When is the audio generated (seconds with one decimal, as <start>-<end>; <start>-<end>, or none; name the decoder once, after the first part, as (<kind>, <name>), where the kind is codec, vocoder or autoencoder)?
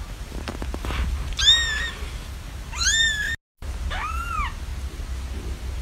none